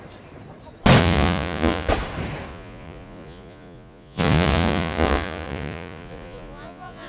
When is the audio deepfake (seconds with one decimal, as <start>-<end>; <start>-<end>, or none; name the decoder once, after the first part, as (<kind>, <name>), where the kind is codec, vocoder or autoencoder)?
1.0-1.9 (vocoder, Vocos); 2.5-7.1